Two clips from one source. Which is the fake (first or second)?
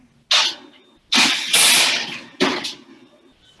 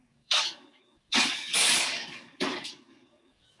second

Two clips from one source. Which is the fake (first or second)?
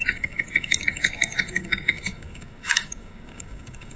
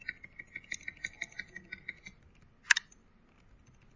first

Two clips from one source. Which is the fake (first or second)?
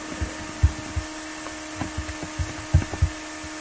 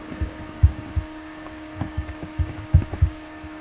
second